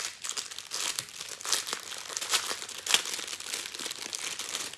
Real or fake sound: real